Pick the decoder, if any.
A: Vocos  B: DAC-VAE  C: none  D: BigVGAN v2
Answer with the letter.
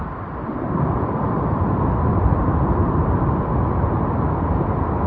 C